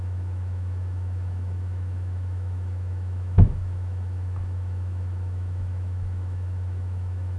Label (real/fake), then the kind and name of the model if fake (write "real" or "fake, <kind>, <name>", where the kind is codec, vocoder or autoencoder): fake, autoencoder, DAC-VAE